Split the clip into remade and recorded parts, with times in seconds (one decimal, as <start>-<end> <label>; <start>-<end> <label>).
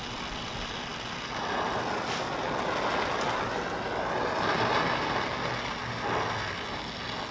0.0-7.3 recorded